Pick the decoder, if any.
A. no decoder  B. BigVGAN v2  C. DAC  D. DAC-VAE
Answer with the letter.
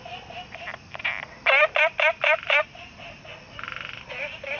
A